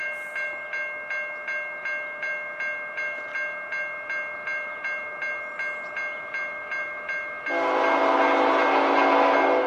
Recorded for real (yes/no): yes